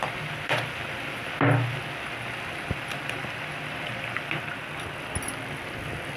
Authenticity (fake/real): real